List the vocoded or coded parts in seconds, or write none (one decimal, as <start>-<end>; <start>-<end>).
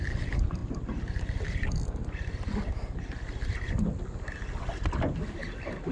none